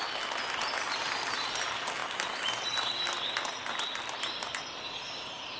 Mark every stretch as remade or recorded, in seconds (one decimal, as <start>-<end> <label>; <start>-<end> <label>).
0.0-5.6 recorded

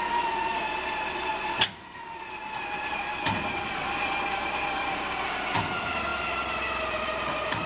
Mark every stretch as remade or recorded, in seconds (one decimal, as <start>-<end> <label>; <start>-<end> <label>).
0.0-1.3 remade; 1.3-2.6 recorded; 2.6-7.7 remade

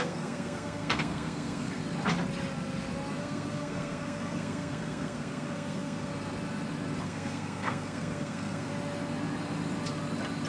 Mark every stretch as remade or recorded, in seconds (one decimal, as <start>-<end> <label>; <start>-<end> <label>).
0.0-1.8 remade; 1.8-3.2 recorded; 3.2-6.1 remade; 6.1-7.0 recorded; 7.0-8.7 remade; 8.7-10.5 recorded

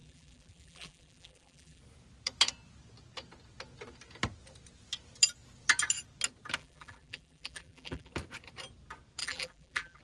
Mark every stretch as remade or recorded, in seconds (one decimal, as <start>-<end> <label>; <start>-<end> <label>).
0.0-1.8 remade; 1.8-6.6 recorded; 6.6-8.1 remade; 8.1-9.2 recorded; 9.2-10.0 remade

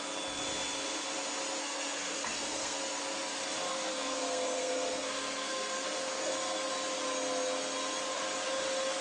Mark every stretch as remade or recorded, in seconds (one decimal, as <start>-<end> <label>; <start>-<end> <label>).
0.0-1.6 recorded; 1.6-2.8 remade; 2.8-3.7 recorded; 3.7-6.7 remade; 6.7-9.0 recorded

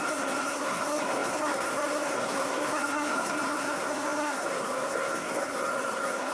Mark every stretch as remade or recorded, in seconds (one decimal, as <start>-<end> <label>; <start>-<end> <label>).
0.0-6.3 remade